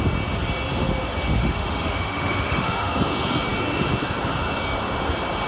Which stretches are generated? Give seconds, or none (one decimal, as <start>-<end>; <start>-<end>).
1.4-3.0